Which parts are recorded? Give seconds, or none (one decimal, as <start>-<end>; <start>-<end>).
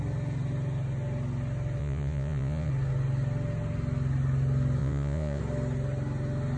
0.0-1.8; 2.7-4.8; 5.4-6.6